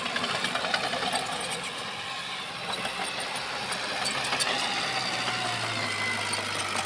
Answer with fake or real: real